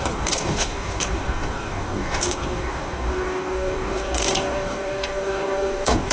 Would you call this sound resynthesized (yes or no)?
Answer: yes